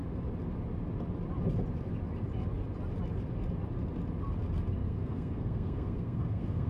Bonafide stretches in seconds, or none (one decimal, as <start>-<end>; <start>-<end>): 0.0-4.8